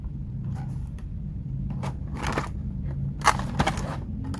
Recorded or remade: recorded